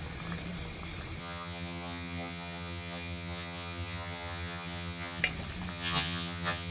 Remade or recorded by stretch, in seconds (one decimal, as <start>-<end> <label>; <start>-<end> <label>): 0.0-1.2 recorded; 1.2-5.2 remade; 5.2-5.7 recorded; 5.7-6.7 remade